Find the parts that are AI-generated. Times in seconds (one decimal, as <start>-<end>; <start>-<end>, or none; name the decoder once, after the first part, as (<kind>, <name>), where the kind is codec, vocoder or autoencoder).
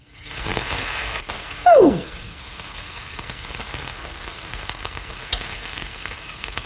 0.0-6.7 (codec, SNAC)